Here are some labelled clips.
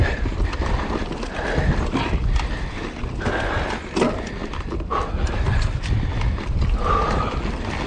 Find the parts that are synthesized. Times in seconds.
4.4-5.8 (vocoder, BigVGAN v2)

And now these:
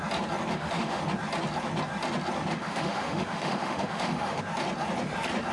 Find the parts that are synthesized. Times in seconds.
0.5-1.0 (autoencoder, DAC-VAE); 2.5-4.4

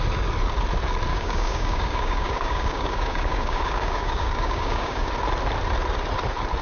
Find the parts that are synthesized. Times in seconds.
1.1-5.1 (codec, DAC)

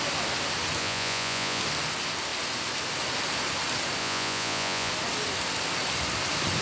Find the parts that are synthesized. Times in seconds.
0.8-1.6 (vocoder, Vocos); 4.0-4.9

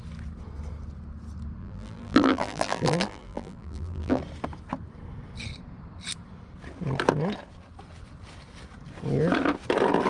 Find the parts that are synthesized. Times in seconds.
1.6-4.2 (vocoder, BigVGAN v2)

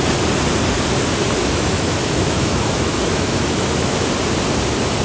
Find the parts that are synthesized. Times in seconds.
1.4-4.1 (autoencoder, DAC-VAE)